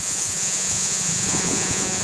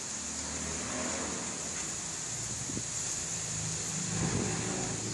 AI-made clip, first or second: first